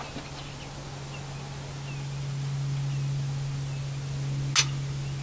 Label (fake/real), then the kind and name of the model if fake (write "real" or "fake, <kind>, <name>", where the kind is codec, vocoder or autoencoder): real